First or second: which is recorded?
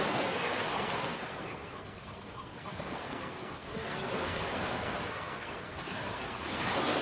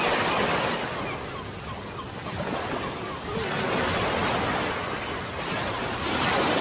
second